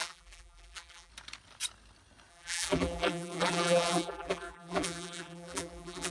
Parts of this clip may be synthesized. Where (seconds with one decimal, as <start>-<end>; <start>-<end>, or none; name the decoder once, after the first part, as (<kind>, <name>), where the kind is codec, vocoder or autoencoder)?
0.0-1.1 (vocoder, BigVGAN v2); 2.3-6.1